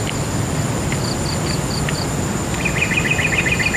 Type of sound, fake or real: real